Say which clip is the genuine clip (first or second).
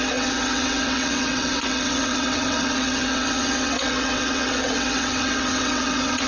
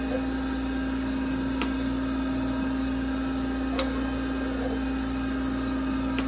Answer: second